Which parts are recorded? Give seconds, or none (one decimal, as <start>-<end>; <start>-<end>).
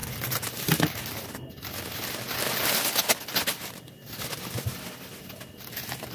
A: 0.0-6.1